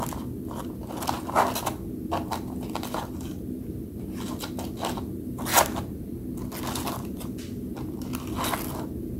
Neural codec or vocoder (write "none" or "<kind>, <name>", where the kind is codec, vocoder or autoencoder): none